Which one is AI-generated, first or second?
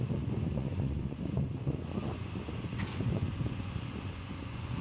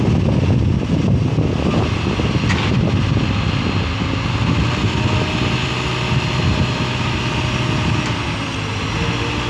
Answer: first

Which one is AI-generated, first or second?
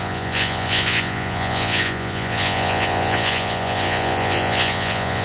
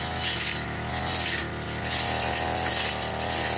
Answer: first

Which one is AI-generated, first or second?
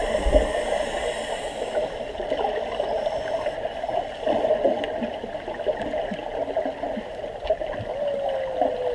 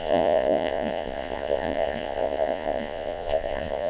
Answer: second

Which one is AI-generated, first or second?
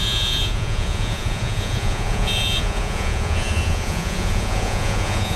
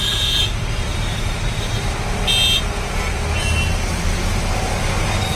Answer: first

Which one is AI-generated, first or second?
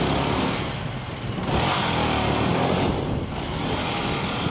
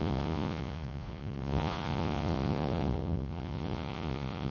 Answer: second